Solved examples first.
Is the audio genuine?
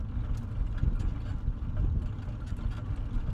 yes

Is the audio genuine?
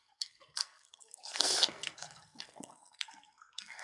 no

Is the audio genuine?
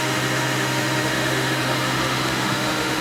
no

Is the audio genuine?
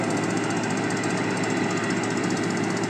yes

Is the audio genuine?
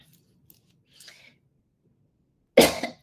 yes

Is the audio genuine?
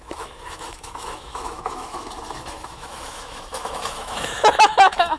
no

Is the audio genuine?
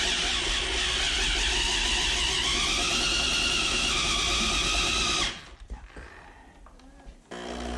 yes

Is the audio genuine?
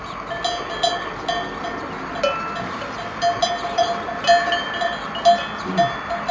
yes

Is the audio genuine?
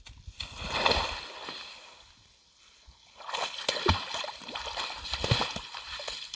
yes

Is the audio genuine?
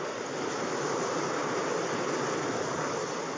yes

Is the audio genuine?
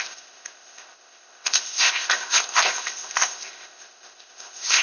no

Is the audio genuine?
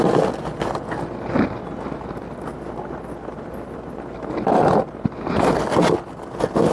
yes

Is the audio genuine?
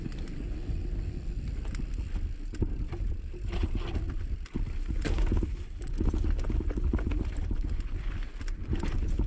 yes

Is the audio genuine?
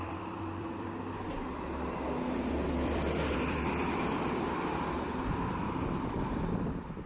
no